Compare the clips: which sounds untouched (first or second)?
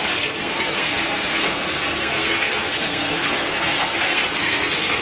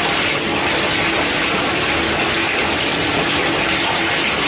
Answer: second